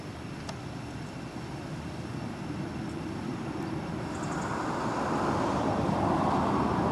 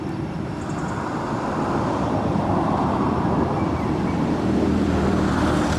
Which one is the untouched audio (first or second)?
first